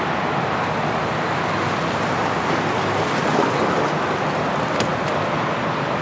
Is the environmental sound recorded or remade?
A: recorded